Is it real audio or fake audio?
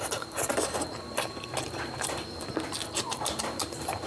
fake